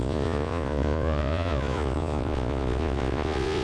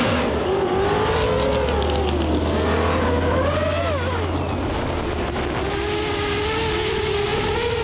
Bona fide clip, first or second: second